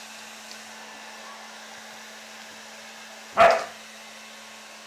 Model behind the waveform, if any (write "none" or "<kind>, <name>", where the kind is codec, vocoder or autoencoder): none